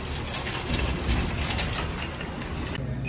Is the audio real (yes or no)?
yes